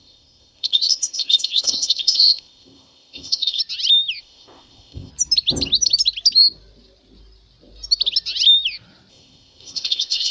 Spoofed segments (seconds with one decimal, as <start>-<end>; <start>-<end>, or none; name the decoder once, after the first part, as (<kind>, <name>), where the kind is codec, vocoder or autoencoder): 0.0-3.6 (codec, ZipCodec); 4.2-5.1; 9.1-10.3

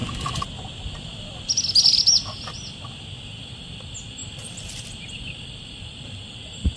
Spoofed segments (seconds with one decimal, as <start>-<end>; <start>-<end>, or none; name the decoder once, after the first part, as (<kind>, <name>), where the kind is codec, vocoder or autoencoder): 4.2-4.7 (vocoder, BigVGAN v2)

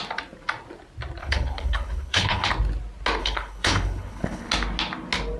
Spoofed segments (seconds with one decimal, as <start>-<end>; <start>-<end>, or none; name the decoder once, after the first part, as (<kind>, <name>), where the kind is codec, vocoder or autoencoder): 1.2-2.5 (codec, HILCodec); 3.2-4.5

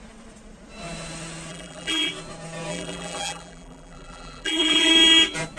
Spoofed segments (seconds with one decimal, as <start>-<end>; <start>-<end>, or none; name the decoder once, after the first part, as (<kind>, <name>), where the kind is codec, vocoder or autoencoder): 1.5-2.1 (vocoder, BigVGAN v2); 2.7-4.9

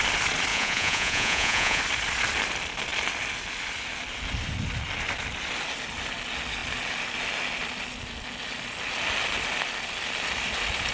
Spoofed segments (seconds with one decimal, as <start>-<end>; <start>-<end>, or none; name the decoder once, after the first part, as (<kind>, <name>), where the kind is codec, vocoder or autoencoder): 0.5-1.8 (vocoder, Vocos)

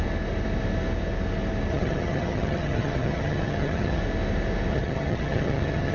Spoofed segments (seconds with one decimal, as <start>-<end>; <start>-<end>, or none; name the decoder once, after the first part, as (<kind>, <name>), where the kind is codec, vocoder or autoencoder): 1.7-4.0 (vocoder, HiFi-GAN); 4.7-5.9

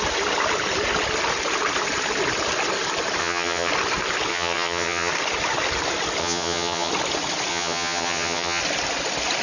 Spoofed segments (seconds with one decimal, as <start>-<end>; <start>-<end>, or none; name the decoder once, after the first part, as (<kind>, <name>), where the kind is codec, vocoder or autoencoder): 3.2-3.7 (vocoder, HiFi-GAN); 4.3-5.1; 6.2-6.9; 7.5-8.6

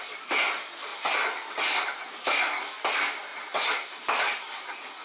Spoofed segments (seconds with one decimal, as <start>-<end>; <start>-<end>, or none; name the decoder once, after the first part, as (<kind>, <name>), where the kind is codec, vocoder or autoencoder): none